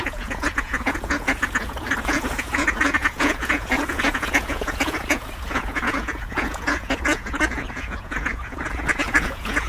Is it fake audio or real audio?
fake